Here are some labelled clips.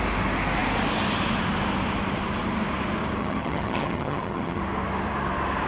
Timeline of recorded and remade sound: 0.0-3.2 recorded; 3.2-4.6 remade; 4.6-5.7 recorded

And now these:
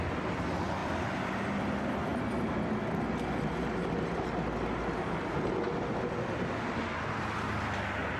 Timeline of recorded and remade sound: 0.0-0.8 recorded; 0.8-1.6 remade; 1.6-8.2 recorded

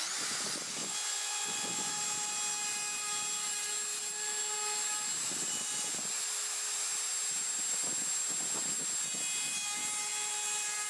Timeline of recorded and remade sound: 0.0-0.8 recorded; 0.8-1.9 remade; 1.9-10.9 recorded

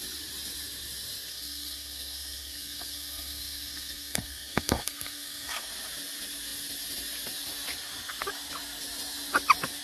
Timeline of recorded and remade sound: 0.0-1.3 recorded; 1.3-5.7 remade; 5.7-9.8 recorded